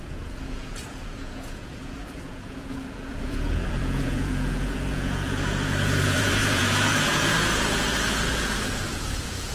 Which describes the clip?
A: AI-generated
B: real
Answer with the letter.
A